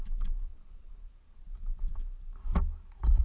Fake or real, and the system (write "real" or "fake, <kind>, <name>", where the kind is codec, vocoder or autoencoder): real